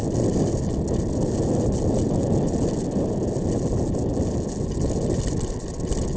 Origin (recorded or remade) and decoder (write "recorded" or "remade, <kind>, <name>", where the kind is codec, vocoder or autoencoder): recorded